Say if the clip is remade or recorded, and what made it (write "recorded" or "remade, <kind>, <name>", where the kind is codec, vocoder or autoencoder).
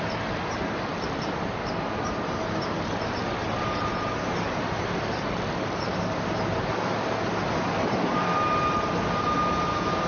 recorded